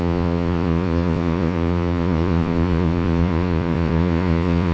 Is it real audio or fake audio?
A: fake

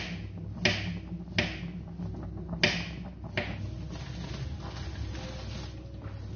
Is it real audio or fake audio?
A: real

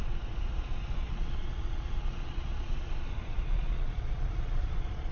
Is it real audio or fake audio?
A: fake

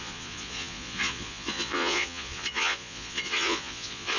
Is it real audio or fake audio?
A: fake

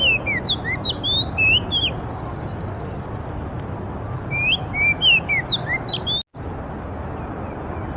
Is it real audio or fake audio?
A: real